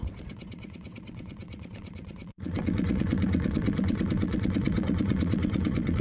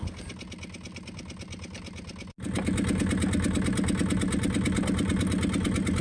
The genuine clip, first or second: second